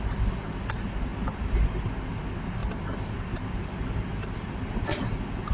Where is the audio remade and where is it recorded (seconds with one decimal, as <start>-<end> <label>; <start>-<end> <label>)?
0.0-5.5 recorded